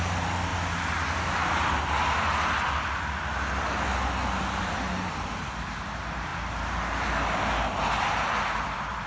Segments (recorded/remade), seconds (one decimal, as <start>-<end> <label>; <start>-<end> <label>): 0.0-9.1 recorded